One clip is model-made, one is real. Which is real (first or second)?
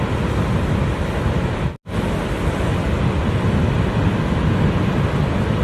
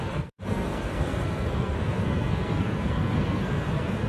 first